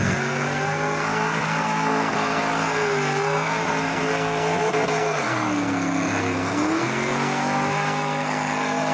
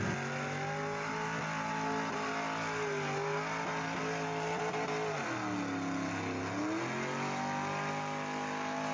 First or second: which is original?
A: second